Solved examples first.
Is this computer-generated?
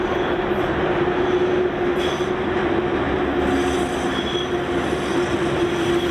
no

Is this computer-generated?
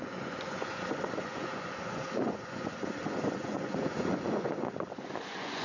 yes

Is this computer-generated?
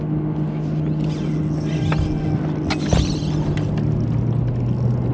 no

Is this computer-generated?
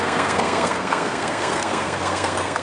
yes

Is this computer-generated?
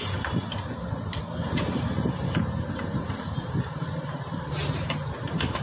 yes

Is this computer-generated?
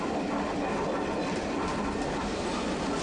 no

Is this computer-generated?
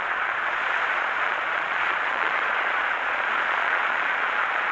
yes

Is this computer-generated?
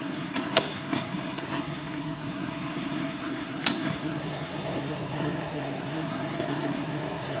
yes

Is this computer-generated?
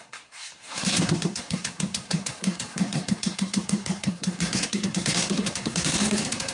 yes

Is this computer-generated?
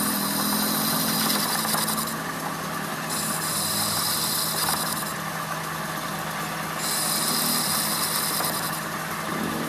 no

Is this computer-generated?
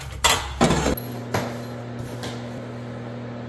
no